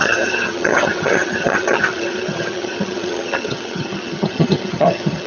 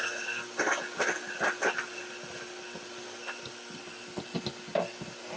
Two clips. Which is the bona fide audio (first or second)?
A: second